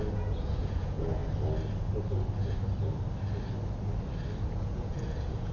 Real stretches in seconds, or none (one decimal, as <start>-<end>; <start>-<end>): 1.2-4.5